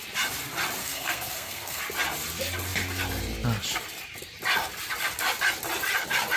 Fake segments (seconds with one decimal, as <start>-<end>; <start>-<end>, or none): 0.8-1.8